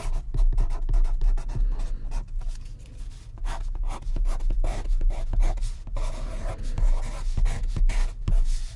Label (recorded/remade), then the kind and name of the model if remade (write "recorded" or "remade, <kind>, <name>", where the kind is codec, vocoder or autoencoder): recorded